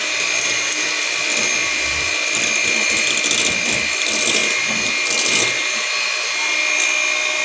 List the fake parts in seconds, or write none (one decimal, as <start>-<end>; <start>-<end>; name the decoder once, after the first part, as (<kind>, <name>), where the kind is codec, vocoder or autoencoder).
none